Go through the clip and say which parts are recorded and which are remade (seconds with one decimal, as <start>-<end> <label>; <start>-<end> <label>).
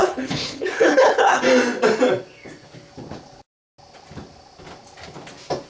0.0-1.4 remade; 1.4-5.7 recorded